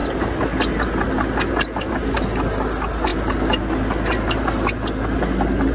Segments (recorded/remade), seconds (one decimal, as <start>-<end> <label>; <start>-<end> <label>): 0.0-5.7 recorded